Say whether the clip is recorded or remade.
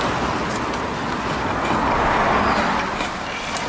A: recorded